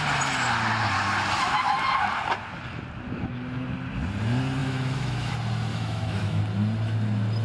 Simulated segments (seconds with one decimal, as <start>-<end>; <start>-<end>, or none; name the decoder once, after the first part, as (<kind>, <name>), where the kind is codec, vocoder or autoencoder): 4.6-5.3 (autoencoder, DAC-VAE); 5.7-6.4